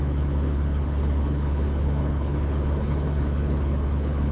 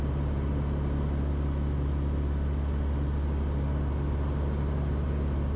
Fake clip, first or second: first